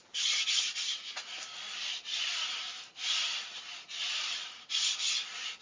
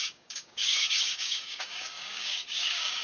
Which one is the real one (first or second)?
first